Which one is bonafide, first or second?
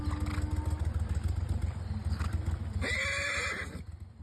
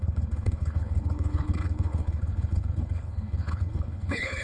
first